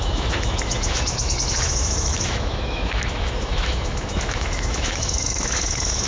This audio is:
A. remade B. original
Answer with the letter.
A